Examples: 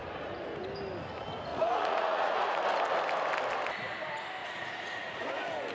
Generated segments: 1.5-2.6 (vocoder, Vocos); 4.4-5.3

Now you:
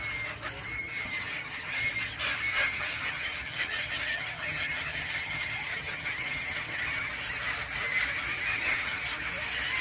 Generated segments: 0.8-1.9 (vocoder, HiFi-GAN); 2.5-7.1; 8.5-9.0